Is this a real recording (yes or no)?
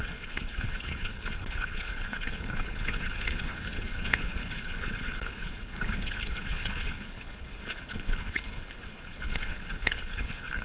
no